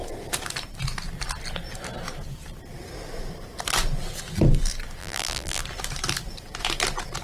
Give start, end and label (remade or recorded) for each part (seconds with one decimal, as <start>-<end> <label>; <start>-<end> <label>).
0.0-5.0 recorded; 5.0-5.6 remade; 5.6-7.2 recorded